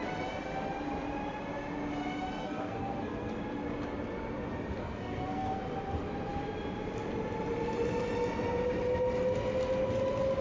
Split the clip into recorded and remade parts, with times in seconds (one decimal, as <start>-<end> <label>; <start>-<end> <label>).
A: 0.0-2.4 recorded; 2.4-3.3 remade; 3.3-4.8 recorded; 4.8-5.6 remade; 5.6-10.4 recorded

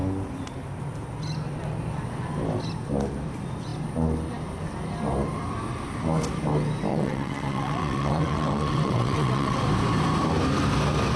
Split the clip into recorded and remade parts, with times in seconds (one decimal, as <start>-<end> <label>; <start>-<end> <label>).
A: 0.0-6.9 recorded; 6.9-9.6 remade; 9.6-11.2 recorded

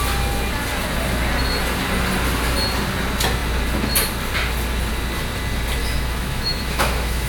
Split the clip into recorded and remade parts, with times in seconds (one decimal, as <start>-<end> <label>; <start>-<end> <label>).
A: 0.0-5.8 recorded; 5.8-7.3 remade

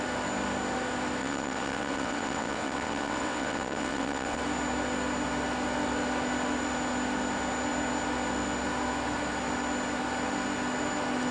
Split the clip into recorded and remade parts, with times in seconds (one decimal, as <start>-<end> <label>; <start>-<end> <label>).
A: 0.0-1.2 recorded; 1.2-4.4 remade; 4.4-11.3 recorded